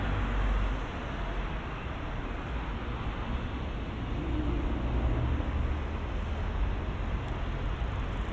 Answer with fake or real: real